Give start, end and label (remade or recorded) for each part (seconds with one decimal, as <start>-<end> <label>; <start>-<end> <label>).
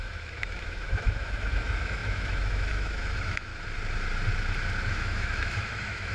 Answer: 0.0-3.5 remade; 3.5-4.9 recorded; 4.9-6.1 remade